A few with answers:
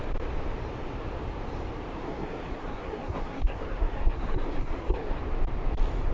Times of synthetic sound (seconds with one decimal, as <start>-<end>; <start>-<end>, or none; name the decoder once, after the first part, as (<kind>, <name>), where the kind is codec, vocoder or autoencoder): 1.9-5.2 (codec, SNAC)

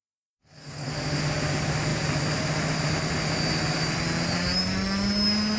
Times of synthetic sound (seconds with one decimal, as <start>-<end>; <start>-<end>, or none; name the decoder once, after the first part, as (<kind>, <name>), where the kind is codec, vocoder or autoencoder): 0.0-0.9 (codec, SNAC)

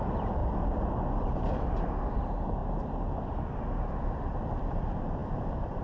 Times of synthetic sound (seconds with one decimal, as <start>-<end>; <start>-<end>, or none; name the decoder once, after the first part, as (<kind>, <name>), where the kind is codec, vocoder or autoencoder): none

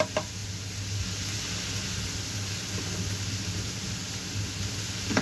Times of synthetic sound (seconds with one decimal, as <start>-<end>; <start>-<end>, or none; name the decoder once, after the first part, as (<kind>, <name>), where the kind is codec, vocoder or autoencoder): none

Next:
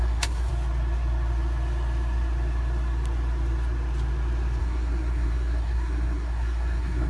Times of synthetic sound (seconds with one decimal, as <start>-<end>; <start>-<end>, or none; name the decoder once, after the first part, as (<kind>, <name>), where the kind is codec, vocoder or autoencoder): 0.0-0.5 (codec, SNAC); 4.6-7.1